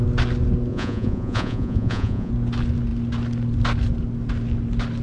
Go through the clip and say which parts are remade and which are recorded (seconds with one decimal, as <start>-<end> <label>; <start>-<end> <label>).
0.0-0.7 recorded; 0.7-2.3 remade; 2.3-5.0 recorded